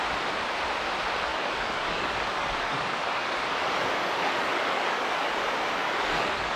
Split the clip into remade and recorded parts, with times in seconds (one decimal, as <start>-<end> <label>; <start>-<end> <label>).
0.0-1.3 recorded; 1.3-5.3 remade; 5.3-5.8 recorded; 5.8-6.6 remade